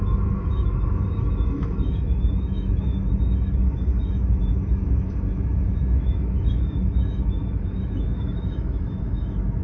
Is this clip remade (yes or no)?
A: yes